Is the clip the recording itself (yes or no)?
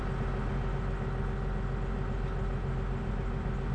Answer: yes